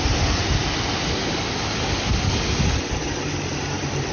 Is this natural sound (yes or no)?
yes